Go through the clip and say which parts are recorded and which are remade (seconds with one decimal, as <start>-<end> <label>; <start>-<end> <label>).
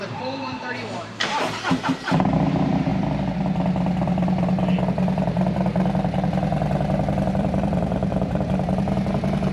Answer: 0.0-2.9 remade; 2.9-7.3 recorded; 7.3-9.5 remade